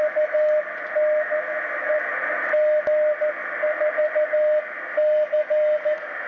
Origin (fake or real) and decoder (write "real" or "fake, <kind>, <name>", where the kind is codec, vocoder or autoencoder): real